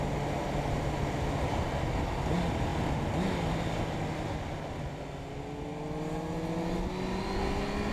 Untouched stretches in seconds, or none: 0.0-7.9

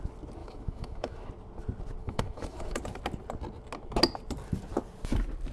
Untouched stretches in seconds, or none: 0.0-0.4; 1.3-2.0; 2.8-5.5

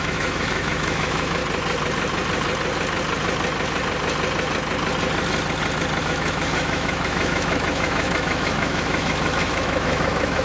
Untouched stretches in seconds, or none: 1.4-6.0

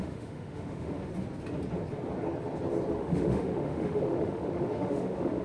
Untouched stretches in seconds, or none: 1.1-2.9

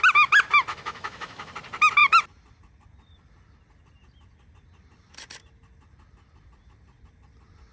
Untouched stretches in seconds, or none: 0.0-0.7; 1.5-7.7

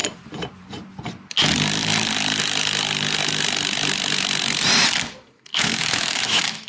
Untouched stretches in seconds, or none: 0.0-5.5

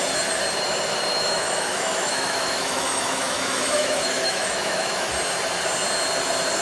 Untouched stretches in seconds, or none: 0.0-1.1; 5.1-6.6

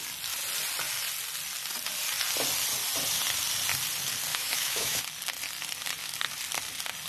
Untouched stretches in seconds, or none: 0.0-4.3; 5.0-7.1